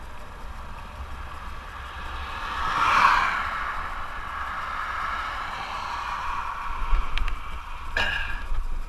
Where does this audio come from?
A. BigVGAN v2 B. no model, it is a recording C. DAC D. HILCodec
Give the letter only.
B